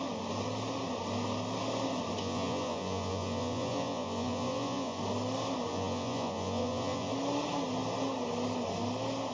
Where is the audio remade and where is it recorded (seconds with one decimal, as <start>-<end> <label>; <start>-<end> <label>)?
0.0-2.2 recorded; 2.2-5.0 remade; 5.0-5.7 recorded; 5.7-7.1 remade; 7.1-9.3 recorded